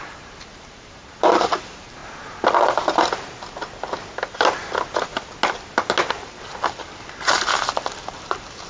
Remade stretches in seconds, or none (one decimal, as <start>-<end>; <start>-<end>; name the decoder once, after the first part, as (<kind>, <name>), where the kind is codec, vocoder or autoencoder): 0.0-2.0 (vocoder, BigVGAN v2); 6.1-8.7